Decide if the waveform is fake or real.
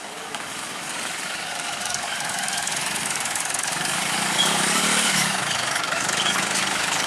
fake